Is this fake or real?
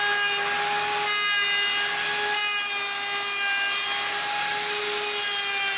real